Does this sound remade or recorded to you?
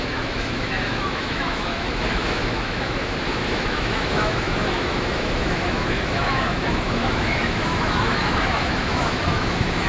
remade